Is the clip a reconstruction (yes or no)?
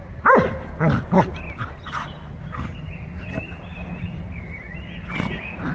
no